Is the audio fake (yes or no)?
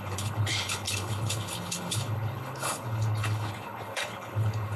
yes